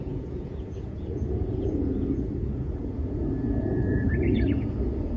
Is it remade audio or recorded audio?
remade